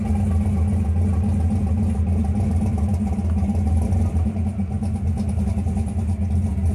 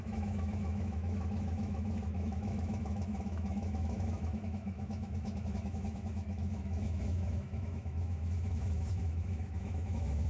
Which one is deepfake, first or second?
second